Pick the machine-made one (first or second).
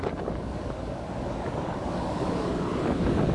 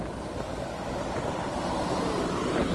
first